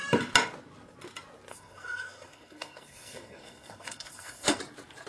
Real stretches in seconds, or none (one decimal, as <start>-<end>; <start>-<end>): 0.0-1.5; 4.6-5.1